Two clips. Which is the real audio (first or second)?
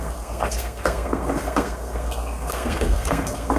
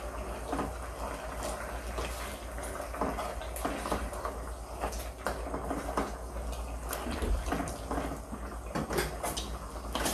second